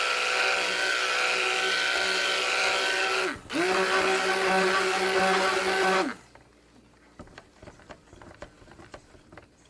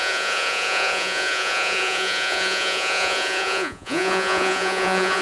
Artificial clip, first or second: second